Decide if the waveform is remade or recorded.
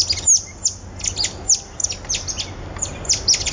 recorded